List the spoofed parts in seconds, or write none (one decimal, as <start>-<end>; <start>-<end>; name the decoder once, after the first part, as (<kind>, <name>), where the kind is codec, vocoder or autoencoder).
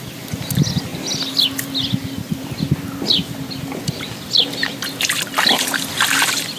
none